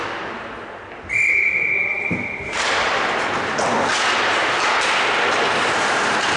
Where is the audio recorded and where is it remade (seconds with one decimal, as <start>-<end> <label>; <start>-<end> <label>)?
0.0-1.9 recorded; 1.9-2.9 remade; 2.9-6.4 recorded